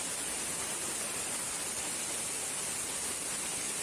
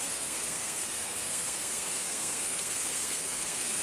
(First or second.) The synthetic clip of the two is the second